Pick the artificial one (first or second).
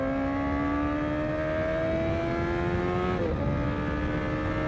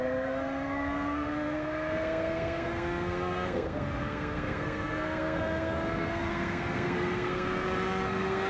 second